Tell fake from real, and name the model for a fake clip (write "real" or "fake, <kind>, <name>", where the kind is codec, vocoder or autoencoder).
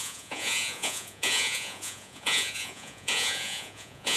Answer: fake, vocoder, Vocos